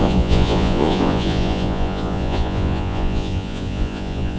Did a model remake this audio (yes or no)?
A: yes